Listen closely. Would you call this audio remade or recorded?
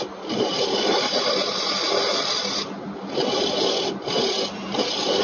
recorded